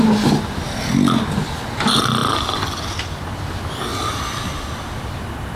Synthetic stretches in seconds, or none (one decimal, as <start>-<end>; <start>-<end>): none